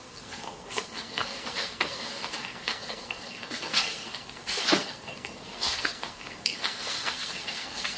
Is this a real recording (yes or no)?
no